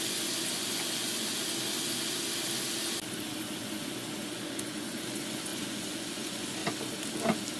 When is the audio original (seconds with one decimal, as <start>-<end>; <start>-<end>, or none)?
1.3-3.4; 6.6-7.6